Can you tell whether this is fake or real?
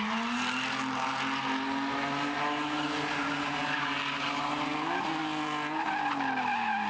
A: real